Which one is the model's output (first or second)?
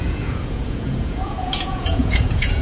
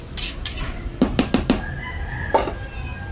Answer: first